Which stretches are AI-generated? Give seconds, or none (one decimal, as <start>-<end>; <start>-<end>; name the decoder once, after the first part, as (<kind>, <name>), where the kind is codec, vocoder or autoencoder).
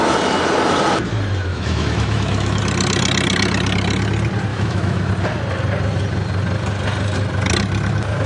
1.5-2.6 (autoencoder, DAC-VAE); 4.5-5.1